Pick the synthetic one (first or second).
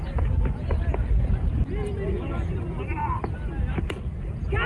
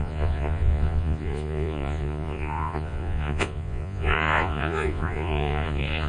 second